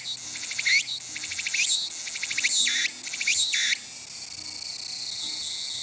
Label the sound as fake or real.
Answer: real